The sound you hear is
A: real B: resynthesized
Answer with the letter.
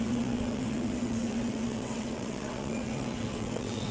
B